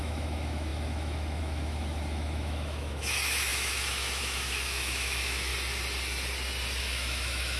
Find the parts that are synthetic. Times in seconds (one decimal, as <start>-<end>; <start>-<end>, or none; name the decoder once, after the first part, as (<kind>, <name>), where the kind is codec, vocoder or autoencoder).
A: 0.0-5.5 (autoencoder, DAC-VAE); 6.8-7.6